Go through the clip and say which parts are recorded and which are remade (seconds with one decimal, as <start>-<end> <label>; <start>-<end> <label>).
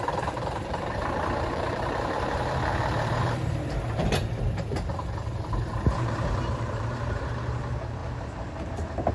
0.0-2.7 remade; 2.7-3.2 recorded; 3.2-8.0 remade; 8.0-9.1 recorded